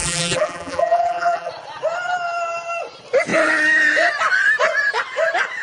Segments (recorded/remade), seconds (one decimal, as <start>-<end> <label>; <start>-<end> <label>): 0.0-1.5 remade; 1.5-5.6 recorded